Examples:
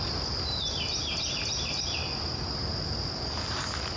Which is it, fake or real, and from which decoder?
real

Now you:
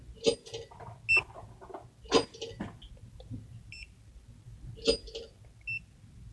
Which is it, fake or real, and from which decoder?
real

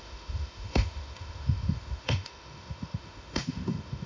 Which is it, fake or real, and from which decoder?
fake, autoencoder, DAC-VAE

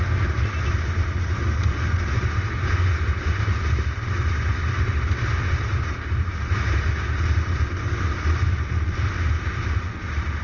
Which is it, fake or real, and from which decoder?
real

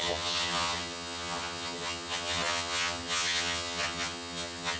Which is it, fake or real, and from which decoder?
fake, vocoder, HiFi-GAN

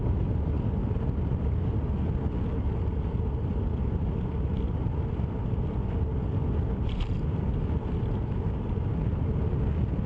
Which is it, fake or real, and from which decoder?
real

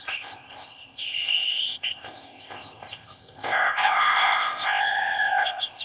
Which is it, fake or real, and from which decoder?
fake, codec, ZipCodec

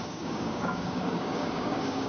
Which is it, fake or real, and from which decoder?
fake, codec, DAC